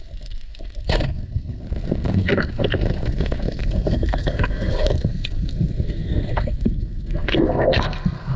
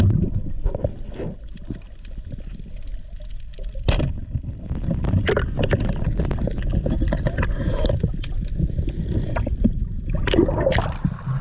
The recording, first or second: second